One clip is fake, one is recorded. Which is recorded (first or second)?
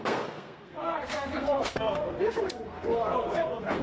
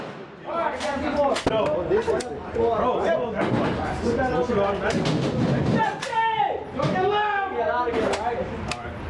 second